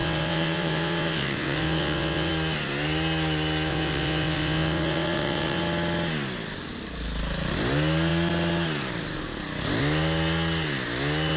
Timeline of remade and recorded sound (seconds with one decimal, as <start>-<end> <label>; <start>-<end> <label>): 0.0-2.3 remade; 2.3-3.7 recorded; 3.7-5.6 remade; 5.6-11.4 recorded